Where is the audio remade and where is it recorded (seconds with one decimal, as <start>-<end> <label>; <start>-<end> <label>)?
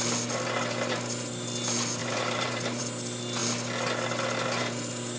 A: 0.0-2.0 recorded; 2.0-2.8 remade; 2.8-5.2 recorded